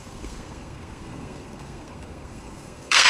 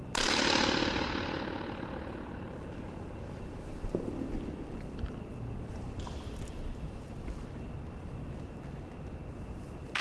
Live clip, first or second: second